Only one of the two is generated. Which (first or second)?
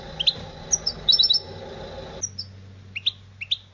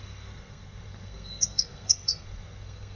second